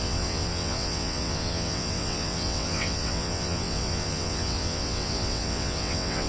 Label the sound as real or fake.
fake